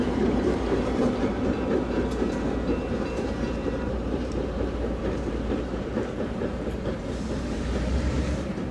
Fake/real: fake